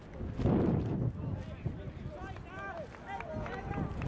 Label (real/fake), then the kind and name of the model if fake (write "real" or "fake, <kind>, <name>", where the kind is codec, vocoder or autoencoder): real